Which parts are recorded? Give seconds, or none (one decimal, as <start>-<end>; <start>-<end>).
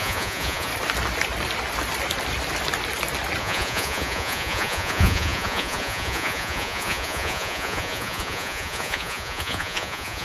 0.7-3.4